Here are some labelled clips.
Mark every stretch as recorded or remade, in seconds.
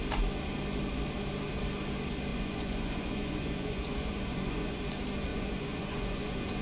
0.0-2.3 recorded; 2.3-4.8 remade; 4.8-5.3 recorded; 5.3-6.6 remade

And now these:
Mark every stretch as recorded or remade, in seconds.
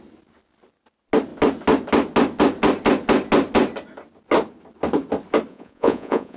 0.0-5.5 recorded; 5.5-6.4 remade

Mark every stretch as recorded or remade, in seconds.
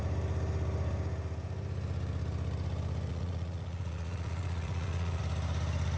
0.0-3.1 recorded; 3.1-5.2 remade; 5.2-6.0 recorded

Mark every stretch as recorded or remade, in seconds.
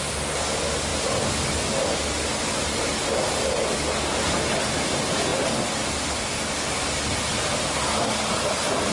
0.0-8.9 recorded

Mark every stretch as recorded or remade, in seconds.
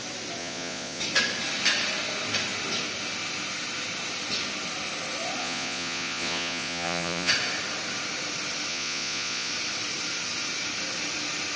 0.0-0.4 recorded; 0.4-1.0 remade; 1.0-5.4 recorded; 5.4-7.3 remade; 7.3-8.7 recorded; 8.7-9.5 remade; 9.5-11.6 recorded